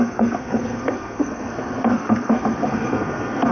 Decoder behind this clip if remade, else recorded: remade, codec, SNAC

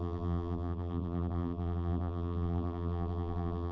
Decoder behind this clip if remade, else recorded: remade, vocoder, BigVGAN v2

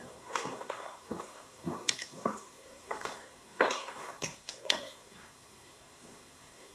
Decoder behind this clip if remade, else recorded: remade, codec, SNAC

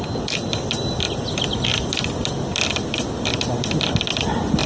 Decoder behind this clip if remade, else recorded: recorded